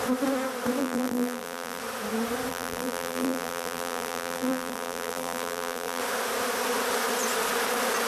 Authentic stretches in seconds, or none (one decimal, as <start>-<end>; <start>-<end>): 0.0-0.8; 1.8-2.5; 6.0-8.1